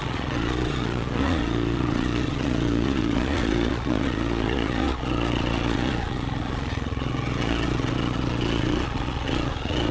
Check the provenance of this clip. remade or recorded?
remade